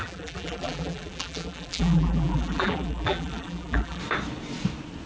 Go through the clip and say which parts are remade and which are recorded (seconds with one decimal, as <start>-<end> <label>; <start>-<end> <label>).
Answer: 0.0-4.0 remade; 4.0-5.1 recorded